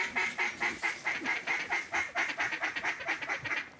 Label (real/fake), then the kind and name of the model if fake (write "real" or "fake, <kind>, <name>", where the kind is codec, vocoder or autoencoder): real